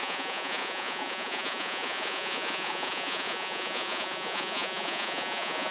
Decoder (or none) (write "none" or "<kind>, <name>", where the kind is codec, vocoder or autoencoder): vocoder, Vocos